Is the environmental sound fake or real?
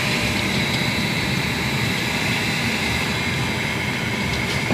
fake